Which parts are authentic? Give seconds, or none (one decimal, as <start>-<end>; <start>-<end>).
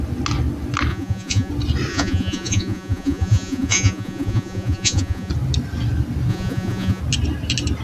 0.0-0.9; 1.5-1.9; 5.3-6.3; 7.0-7.8